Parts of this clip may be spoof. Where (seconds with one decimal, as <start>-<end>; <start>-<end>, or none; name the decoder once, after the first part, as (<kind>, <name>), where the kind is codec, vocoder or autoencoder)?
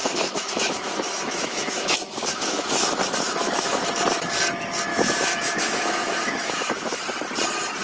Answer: 0.0-3.8 (autoencoder, DAC-VAE); 4.9-7.0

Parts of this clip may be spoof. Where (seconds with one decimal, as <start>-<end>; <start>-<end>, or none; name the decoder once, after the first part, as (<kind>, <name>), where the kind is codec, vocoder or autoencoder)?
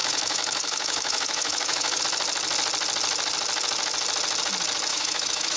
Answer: 0.0-2.0 (autoencoder, DAC-VAE); 4.9-5.6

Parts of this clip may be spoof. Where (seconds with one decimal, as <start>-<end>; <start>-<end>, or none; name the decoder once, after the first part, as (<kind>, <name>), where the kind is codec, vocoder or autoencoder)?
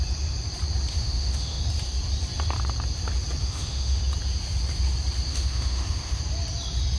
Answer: 0.9-1.6 (autoencoder, DAC-VAE); 3.4-4.0; 5.3-6.2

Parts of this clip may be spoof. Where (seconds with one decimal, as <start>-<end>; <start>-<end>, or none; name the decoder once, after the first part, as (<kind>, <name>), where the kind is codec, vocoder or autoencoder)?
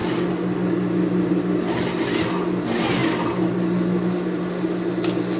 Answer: none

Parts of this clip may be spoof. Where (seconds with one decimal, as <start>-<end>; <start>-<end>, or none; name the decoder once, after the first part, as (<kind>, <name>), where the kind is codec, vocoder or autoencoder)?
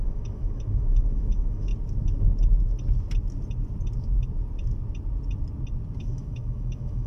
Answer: 0.0-1.7 (autoencoder, DAC-VAE); 6.0-7.1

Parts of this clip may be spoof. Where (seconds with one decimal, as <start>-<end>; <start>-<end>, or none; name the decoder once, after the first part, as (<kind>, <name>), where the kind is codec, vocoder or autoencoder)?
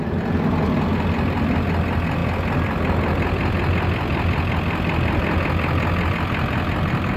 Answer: none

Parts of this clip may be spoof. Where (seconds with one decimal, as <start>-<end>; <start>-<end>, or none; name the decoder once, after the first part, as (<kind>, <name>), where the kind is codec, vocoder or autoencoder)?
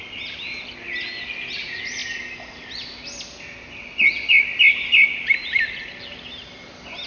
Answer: none